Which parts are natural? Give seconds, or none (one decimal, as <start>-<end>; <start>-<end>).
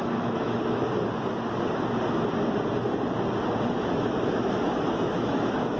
0.8-3.8